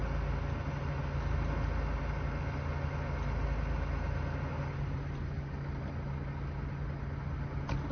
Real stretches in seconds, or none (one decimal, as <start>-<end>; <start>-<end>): 0.0-7.9